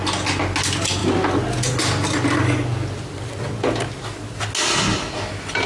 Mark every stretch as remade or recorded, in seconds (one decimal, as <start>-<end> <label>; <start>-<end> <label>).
0.0-5.7 recorded

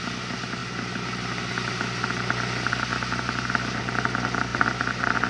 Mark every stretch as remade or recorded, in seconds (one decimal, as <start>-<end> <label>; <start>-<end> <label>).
0.0-5.3 recorded

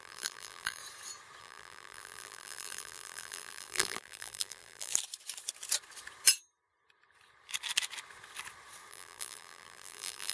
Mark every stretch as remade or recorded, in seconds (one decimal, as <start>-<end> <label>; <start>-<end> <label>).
0.0-0.8 remade; 0.8-1.4 recorded; 1.4-4.9 remade; 4.9-8.9 recorded; 8.9-10.3 remade

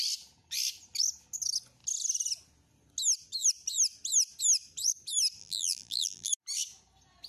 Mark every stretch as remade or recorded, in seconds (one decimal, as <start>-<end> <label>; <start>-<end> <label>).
0.0-5.4 recorded; 5.4-6.3 remade; 6.3-7.3 recorded